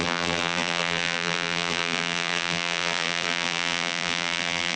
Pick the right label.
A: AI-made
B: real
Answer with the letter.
A